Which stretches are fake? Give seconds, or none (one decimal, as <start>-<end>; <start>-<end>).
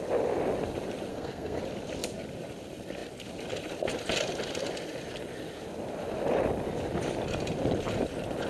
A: 1.1-1.6